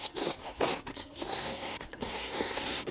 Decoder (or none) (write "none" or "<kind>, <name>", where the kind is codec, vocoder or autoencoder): codec, SNAC